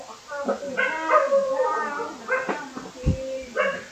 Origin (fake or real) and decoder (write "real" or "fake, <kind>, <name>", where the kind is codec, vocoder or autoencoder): real